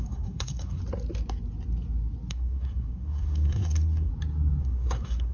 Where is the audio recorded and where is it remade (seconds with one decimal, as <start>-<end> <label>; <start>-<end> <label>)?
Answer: 0.0-0.8 remade; 0.8-2.3 recorded; 2.3-4.1 remade; 4.1-4.6 recorded; 4.6-5.3 remade